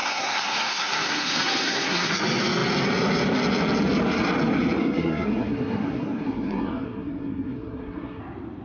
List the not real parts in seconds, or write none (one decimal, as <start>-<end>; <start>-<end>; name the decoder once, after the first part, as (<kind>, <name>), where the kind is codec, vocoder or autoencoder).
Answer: 0.0-2.1 (codec, SNAC); 4.8-8.2